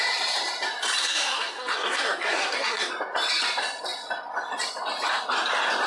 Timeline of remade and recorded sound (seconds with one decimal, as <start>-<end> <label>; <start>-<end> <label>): 0.0-1.0 recorded; 1.0-2.9 remade; 2.9-5.9 recorded